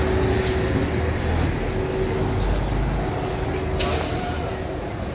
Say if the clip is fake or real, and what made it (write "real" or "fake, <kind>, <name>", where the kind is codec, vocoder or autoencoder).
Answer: real